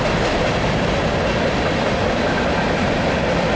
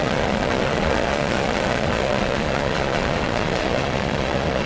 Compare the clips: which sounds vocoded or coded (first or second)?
second